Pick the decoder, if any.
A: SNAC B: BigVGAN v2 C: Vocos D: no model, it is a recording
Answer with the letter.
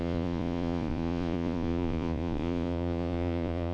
C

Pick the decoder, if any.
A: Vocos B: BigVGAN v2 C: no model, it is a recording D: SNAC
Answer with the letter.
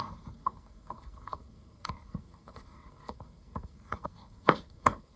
D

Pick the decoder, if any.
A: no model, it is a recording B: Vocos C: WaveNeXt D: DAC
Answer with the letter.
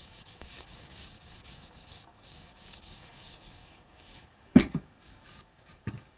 D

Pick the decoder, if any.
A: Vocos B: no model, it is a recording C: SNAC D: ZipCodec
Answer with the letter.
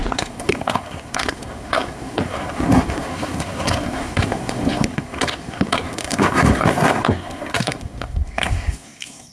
C